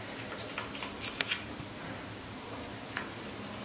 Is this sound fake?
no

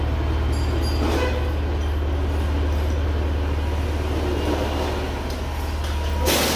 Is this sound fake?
no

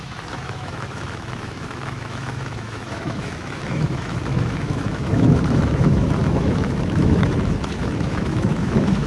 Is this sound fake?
yes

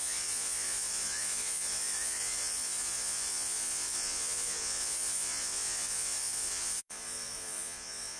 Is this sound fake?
yes